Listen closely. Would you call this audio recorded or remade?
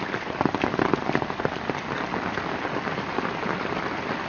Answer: recorded